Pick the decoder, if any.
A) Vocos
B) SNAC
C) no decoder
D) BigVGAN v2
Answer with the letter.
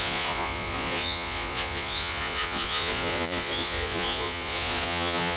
A